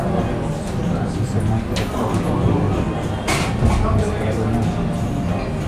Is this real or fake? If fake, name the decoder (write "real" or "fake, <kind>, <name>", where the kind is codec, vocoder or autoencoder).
real